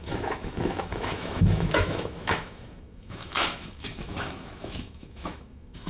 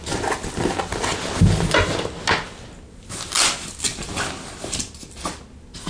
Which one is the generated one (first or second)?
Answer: first